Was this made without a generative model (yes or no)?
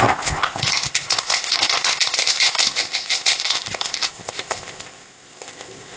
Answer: no